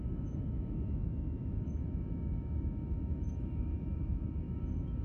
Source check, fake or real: fake